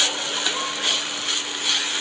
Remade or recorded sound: recorded